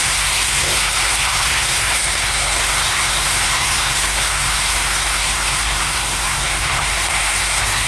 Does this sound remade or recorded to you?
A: remade